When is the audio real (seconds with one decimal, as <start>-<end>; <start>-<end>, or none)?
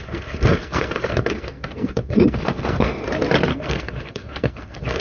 3.0-3.5